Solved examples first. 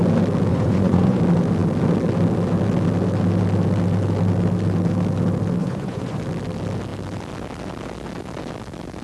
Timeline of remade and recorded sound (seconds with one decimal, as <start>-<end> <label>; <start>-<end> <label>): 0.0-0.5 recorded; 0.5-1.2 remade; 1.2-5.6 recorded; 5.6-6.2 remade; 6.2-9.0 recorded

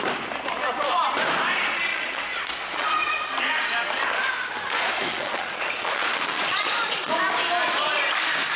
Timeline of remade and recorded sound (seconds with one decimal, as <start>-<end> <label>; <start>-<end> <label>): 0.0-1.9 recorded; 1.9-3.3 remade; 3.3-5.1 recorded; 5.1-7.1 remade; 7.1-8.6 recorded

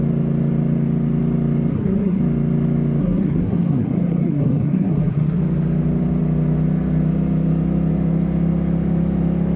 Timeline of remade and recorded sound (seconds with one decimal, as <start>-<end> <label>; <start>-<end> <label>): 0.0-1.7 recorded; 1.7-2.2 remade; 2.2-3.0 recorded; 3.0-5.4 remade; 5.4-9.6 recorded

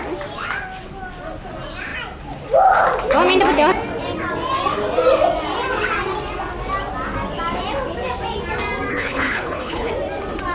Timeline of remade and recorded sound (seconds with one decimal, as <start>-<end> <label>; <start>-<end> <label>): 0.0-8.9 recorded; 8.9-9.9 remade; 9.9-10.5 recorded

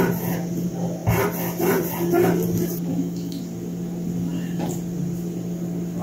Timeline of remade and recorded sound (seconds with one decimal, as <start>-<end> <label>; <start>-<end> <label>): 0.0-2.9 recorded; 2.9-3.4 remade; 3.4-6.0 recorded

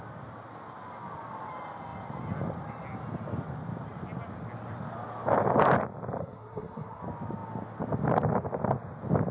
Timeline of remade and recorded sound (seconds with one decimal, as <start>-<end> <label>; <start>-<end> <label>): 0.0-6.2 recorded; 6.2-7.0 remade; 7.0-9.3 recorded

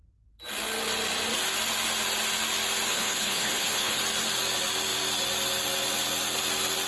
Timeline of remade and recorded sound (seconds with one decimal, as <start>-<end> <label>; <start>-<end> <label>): 0.0-2.9 recorded; 2.9-4.0 remade; 4.0-6.9 recorded

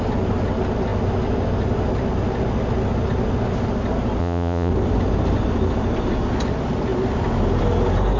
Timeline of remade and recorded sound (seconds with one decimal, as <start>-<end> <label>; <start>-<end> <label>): 0.0-4.2 recorded; 4.2-4.7 remade; 4.7-8.2 recorded